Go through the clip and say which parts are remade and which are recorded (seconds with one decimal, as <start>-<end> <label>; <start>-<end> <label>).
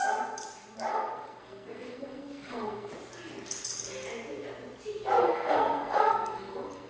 0.0-0.9 recorded; 0.9-2.9 remade; 2.9-5.2 recorded; 5.2-6.9 remade